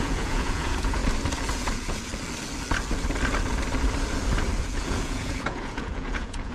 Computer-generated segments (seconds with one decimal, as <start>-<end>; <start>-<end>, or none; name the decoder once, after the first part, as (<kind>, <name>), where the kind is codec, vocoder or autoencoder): 0.0-1.0 (vocoder, Vocos); 1.5-2.1; 4.6-6.5